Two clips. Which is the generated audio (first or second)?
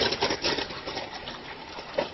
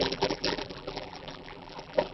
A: second